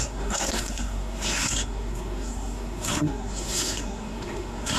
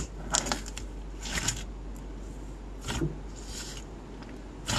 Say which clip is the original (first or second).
second